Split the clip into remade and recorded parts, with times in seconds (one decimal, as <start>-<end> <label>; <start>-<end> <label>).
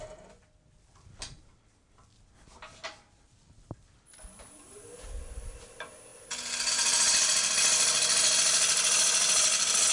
0.0-9.9 recorded